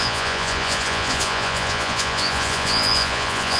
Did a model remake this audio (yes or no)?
yes